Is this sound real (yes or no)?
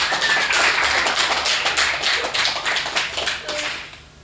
yes